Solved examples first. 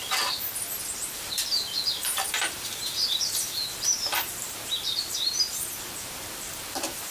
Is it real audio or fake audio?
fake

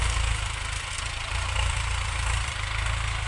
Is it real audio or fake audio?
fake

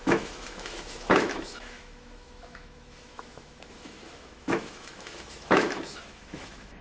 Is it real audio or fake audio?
fake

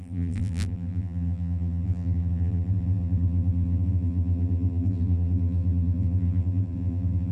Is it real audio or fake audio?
fake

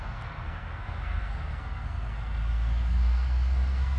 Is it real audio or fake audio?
fake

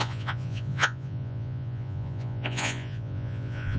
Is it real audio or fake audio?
fake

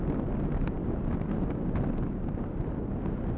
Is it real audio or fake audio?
real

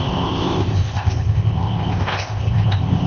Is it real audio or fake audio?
fake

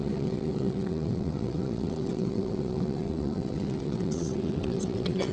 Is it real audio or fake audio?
fake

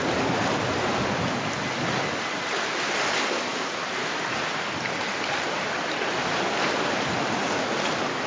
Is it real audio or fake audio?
real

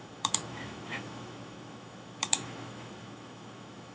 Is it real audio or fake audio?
fake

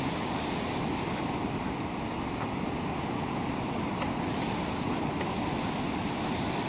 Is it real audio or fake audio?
real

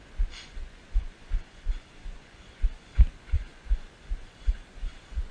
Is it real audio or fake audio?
fake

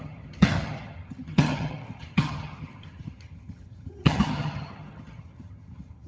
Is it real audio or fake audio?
fake